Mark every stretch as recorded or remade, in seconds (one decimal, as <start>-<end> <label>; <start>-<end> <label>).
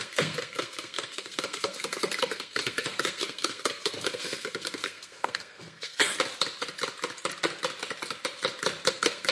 0.0-6.1 remade; 6.1-8.9 recorded; 8.9-9.3 remade